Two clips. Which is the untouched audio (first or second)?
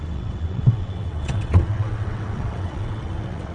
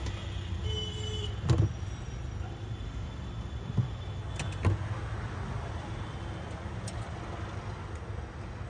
second